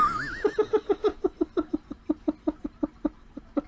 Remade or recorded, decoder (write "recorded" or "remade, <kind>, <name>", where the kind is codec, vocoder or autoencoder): recorded